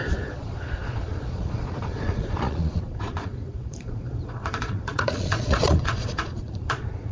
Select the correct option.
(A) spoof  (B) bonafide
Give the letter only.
A